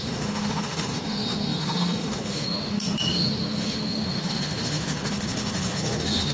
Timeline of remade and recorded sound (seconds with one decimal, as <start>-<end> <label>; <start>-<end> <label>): 0.0-6.3 remade